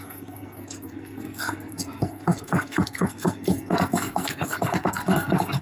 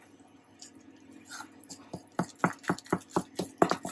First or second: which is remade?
first